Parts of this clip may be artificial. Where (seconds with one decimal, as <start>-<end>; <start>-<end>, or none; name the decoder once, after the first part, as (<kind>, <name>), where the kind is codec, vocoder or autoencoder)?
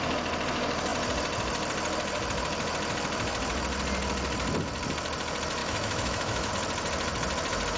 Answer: 5.6-6.5 (autoencoder, DAC-VAE)